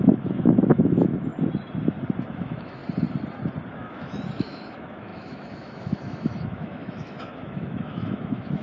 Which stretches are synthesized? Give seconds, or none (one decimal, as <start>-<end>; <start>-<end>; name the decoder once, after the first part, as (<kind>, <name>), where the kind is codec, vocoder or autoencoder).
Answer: 0.0-1.3 (autoencoder, DAC-VAE); 2.2-2.8; 3.8-8.6